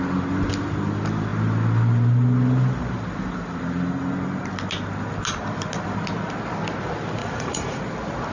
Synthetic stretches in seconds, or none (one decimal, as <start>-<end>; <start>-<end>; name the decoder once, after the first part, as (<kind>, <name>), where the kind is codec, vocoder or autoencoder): 7.2-7.8 (vocoder, Vocos)